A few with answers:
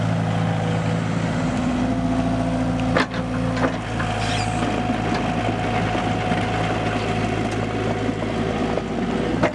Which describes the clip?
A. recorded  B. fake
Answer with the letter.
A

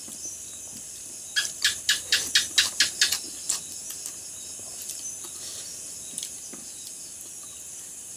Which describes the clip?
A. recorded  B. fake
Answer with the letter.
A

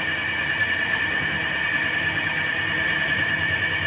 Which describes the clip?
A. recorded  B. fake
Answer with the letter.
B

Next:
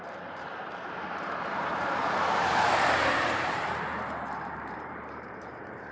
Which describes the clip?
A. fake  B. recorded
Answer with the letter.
A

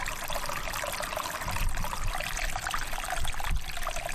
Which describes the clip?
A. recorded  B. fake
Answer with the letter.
A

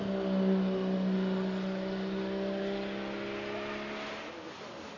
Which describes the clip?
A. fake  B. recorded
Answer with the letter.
B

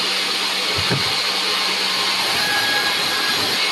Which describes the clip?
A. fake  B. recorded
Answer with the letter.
B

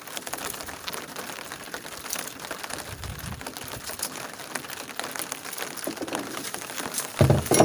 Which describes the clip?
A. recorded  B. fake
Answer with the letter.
A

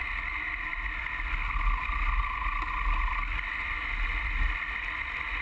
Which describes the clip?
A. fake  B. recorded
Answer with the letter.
B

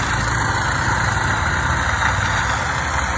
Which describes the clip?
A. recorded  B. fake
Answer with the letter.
B